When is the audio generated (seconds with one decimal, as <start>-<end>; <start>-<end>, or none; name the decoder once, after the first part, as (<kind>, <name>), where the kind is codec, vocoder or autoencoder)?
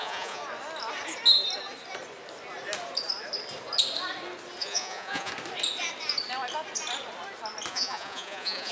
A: 0.0-0.4 (vocoder, Vocos); 4.6-5.3; 7.7-8.7